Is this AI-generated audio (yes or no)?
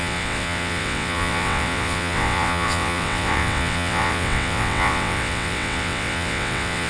yes